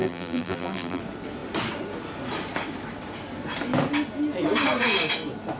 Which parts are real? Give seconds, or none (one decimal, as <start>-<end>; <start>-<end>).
1.0-5.6